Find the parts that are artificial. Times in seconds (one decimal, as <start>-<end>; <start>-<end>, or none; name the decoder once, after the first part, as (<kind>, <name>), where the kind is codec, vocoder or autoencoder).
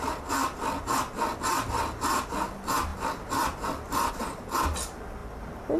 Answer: none